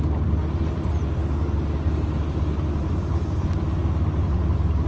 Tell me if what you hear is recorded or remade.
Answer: recorded